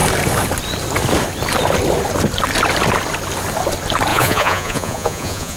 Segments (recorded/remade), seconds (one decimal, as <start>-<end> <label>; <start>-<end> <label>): 0.0-4.1 recorded; 4.1-5.6 remade